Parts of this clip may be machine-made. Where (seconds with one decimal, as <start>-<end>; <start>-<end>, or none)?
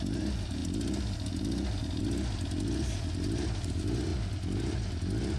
none